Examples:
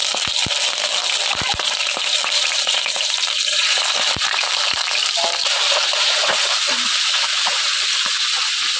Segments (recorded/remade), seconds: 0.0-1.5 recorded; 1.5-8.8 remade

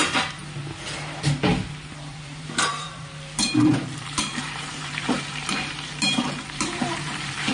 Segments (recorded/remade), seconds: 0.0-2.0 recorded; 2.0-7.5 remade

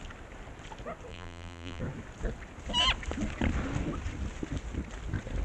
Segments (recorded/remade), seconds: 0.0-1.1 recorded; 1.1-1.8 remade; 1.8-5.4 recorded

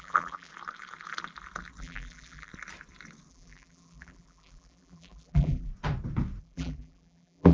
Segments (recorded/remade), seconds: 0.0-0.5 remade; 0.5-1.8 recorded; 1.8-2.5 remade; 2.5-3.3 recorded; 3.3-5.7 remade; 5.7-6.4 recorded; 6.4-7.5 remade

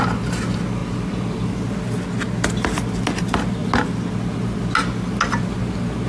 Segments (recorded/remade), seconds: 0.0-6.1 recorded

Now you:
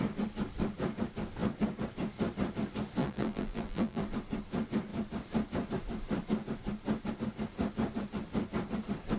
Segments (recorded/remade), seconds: 0.0-3.0 recorded; 3.0-4.0 remade; 4.0-9.2 recorded